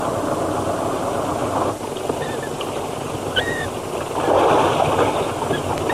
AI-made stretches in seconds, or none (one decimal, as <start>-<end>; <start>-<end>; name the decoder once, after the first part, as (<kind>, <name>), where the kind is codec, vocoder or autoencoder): 1.4-3.4 (vocoder, BigVGAN v2)